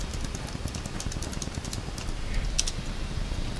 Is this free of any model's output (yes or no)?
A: yes